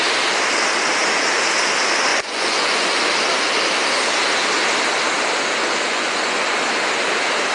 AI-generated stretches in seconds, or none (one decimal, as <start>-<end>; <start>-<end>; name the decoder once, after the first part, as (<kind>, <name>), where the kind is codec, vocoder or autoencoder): 2.1-3.0 (vocoder, Vocos); 5.9-6.6

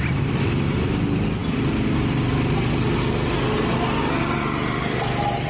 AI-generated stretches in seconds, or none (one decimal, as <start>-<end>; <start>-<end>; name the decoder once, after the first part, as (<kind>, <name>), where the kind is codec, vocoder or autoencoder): none

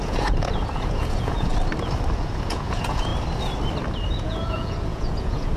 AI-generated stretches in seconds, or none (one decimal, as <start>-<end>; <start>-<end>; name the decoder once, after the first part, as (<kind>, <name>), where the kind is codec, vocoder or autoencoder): 0.0-1.5 (vocoder, Vocos); 2.2-3.1; 4.1-5.6

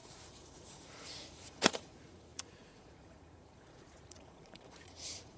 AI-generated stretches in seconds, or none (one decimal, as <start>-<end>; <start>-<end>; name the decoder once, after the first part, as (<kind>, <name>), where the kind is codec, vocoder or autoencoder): 0.0-5.4 (vocoder, Vocos)

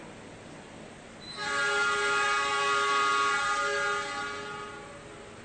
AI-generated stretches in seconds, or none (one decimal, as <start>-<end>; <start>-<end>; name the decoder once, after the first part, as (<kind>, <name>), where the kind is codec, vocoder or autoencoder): none

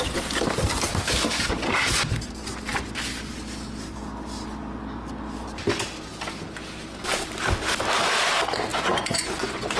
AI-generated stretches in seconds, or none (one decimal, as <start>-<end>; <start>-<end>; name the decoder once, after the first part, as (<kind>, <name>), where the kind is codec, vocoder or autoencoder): 8.7-9.8 (vocoder, Vocos)